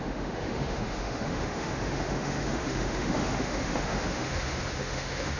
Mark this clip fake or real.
fake